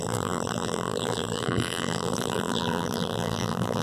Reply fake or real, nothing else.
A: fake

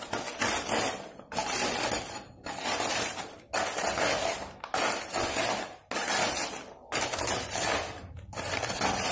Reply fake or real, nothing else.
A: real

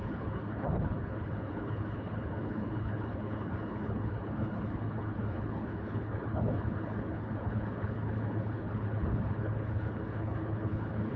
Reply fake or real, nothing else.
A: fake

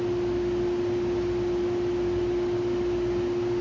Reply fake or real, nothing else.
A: real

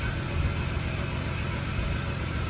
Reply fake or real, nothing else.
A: real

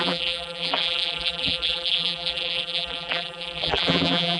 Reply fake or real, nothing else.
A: fake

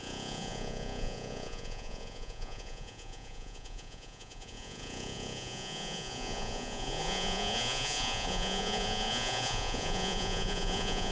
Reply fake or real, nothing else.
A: fake